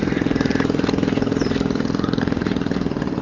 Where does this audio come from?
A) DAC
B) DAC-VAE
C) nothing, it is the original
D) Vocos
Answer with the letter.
C